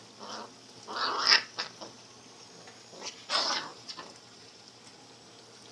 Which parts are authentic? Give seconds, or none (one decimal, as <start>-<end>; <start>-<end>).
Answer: 0.0-3.7; 4.8-5.7